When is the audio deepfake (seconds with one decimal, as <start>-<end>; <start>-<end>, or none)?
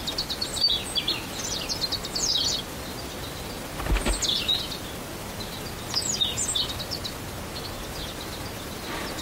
none